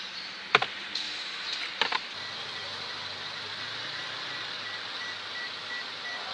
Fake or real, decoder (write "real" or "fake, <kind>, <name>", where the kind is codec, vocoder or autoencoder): real